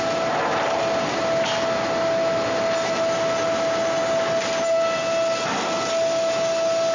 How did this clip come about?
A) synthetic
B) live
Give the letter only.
B